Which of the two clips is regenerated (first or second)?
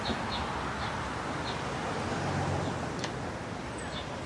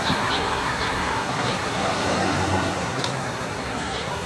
second